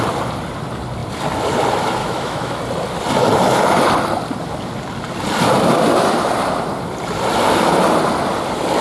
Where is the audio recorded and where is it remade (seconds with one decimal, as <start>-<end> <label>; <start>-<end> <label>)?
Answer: 0.0-2.0 recorded; 2.0-2.6 remade; 2.6-8.8 recorded